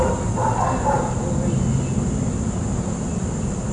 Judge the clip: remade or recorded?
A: recorded